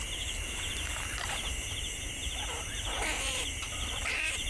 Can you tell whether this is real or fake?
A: fake